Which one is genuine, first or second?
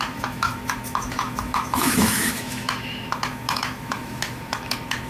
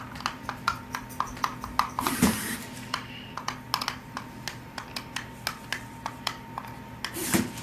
second